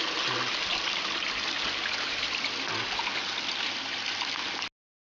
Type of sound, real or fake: real